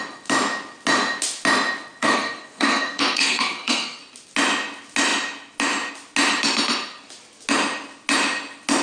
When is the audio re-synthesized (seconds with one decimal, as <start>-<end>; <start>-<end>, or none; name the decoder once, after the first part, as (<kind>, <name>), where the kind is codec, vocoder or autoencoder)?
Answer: 2.0-4.0 (codec, SNAC)